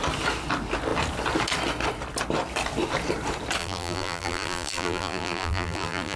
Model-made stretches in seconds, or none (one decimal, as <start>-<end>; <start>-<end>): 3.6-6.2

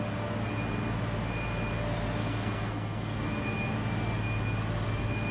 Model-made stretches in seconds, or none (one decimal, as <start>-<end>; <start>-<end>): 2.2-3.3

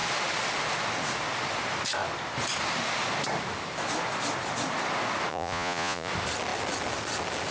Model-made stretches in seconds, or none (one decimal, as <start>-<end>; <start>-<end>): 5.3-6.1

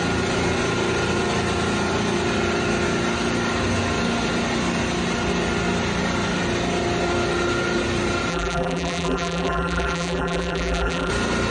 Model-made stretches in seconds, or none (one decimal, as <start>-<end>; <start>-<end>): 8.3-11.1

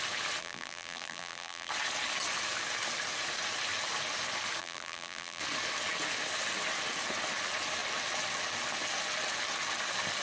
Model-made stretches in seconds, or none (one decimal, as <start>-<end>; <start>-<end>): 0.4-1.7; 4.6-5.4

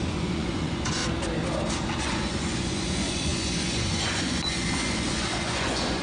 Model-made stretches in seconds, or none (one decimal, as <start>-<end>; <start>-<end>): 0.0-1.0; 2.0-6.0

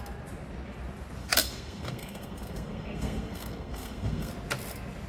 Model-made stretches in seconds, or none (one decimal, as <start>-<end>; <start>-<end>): 1.2-4.3